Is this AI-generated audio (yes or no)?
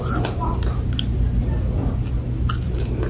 no